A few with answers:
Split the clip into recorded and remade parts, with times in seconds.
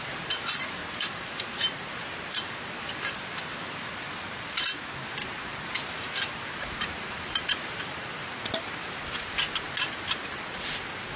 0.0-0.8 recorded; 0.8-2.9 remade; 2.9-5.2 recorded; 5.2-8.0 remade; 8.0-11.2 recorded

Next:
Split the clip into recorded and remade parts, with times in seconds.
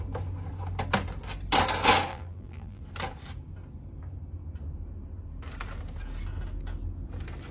0.0-2.1 recorded; 2.1-2.8 remade; 2.8-7.5 recorded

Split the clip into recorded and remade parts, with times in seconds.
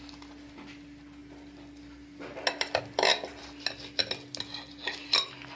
0.0-5.6 recorded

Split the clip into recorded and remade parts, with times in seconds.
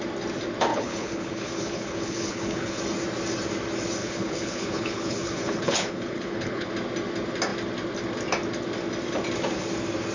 0.0-0.7 recorded; 0.7-2.8 remade; 2.8-4.0 recorded; 4.0-6.7 remade; 6.7-10.1 recorded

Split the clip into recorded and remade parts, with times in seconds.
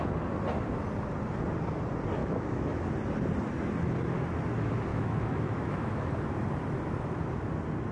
0.0-2.2 recorded; 2.2-2.8 remade; 2.8-4.9 recorded; 4.9-6.1 remade; 6.1-7.9 recorded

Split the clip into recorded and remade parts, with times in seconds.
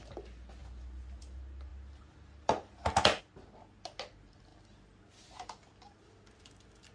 0.0-6.9 recorded